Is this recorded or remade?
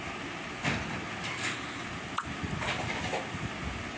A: recorded